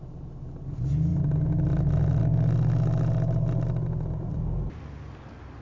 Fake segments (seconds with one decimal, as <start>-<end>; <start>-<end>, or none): none